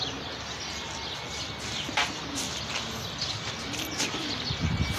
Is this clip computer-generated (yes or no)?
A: no